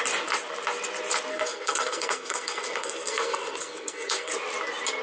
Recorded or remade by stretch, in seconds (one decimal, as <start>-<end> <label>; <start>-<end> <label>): 0.0-1.3 recorded; 1.3-4.3 remade; 4.3-5.0 recorded